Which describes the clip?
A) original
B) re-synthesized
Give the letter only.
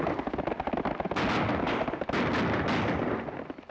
A